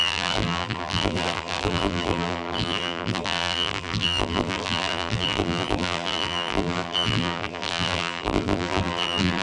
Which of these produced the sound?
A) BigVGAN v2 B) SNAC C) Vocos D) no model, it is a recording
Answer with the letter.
A